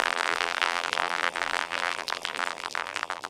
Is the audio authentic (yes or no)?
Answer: no